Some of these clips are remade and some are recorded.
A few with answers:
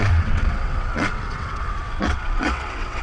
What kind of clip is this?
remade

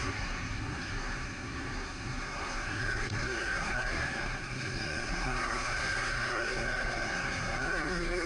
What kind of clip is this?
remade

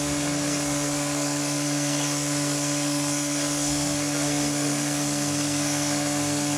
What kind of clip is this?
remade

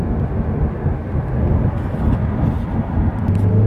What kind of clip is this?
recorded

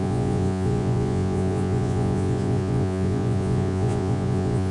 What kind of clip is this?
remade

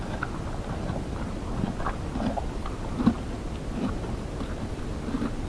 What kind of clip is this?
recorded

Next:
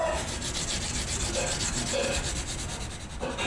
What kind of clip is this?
recorded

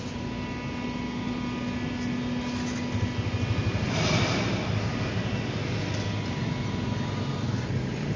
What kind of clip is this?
recorded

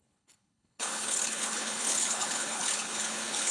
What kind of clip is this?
remade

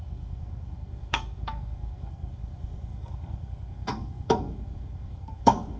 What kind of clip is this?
remade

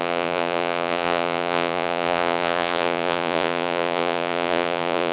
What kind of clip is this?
remade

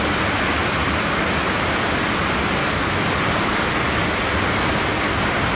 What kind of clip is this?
recorded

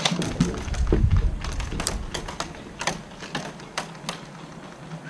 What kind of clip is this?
recorded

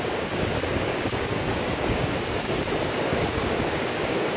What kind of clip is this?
remade